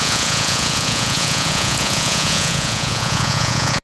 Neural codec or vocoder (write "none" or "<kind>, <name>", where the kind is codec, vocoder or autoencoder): vocoder, Vocos